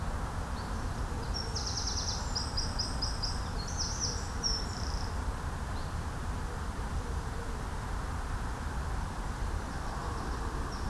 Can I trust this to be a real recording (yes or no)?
no